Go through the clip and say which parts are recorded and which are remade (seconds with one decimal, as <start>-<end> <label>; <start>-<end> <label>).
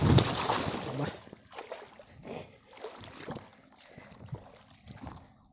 0.0-5.5 recorded